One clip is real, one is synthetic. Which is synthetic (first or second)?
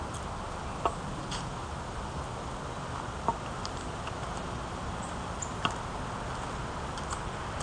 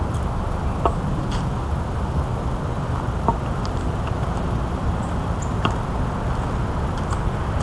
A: second